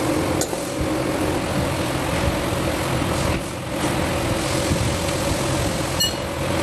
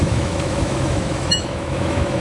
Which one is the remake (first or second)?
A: second